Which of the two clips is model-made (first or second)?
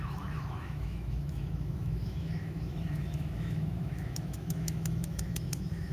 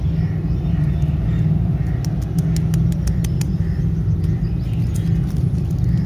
first